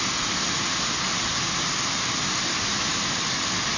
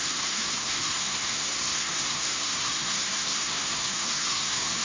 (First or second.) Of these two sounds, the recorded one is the first